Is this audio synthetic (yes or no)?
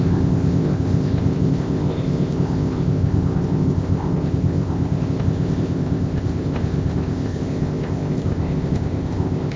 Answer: yes